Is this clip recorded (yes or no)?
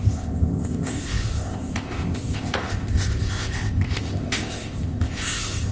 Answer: no